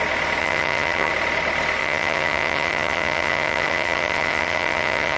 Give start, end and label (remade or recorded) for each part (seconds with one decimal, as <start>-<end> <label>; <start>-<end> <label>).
0.0-0.4 recorded; 0.4-1.1 remade; 1.1-1.8 recorded; 1.8-5.2 remade